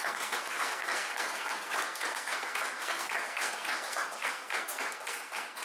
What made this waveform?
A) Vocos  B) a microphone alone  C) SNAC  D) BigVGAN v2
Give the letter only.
C